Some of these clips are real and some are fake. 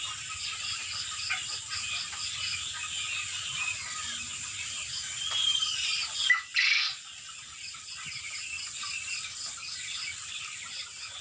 real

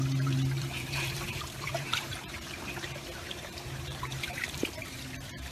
fake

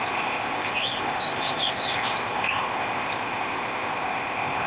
fake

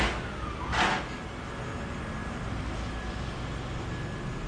real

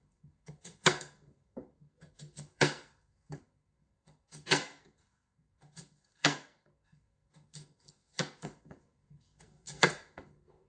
fake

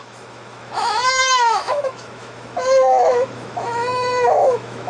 fake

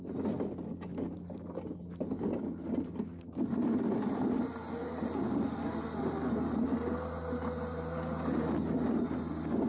real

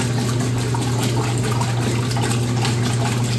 real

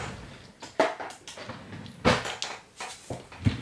real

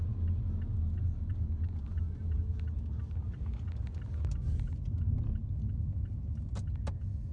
real